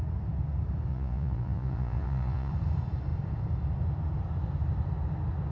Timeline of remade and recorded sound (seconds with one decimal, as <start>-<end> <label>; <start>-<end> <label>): 0.0-0.9 recorded; 0.9-2.5 remade; 2.5-5.5 recorded

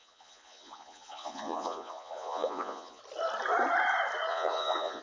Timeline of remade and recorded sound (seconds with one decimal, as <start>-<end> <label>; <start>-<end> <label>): 0.0-3.0 remade; 3.0-4.3 recorded; 4.3-5.0 remade

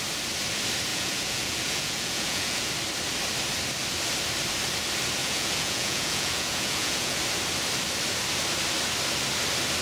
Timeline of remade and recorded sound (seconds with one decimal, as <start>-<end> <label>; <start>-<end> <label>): 0.0-0.9 recorded; 0.9-2.7 remade; 2.7-5.2 recorded; 5.2-7.2 remade; 7.2-9.8 recorded

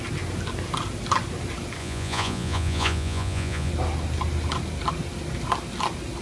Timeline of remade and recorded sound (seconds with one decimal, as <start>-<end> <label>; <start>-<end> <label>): 0.0-1.8 recorded; 1.8-3.7 remade; 3.7-6.2 recorded

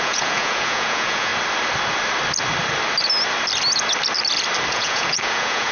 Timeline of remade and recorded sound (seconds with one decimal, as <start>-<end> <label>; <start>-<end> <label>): 0.0-1.3 remade; 1.3-4.7 recorded; 4.7-5.7 remade

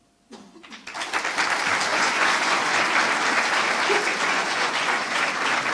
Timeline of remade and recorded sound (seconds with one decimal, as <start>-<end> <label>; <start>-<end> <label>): 0.0-1.9 recorded; 1.9-2.8 remade; 2.8-4.1 recorded; 4.1-5.2 remade; 5.2-5.7 recorded